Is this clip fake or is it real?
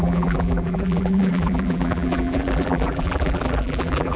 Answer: fake